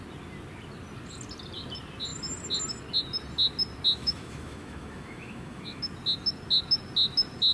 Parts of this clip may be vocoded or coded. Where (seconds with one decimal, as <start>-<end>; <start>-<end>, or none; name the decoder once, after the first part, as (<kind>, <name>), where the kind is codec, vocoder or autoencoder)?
4.0-5.8 (autoencoder, DAC-VAE)